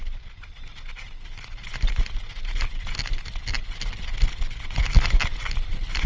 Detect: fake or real real